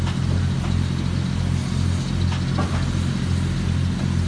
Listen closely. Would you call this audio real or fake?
real